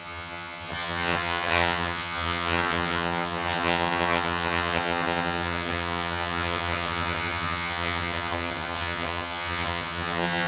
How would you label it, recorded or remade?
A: remade